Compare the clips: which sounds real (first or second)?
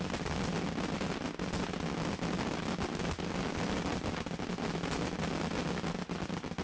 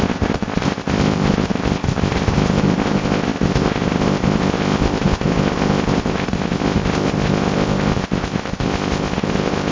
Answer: first